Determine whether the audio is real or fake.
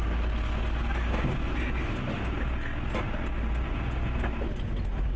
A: real